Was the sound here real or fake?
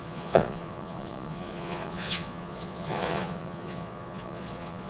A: fake